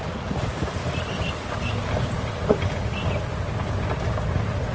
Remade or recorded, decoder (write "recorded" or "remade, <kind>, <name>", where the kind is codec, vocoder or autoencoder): recorded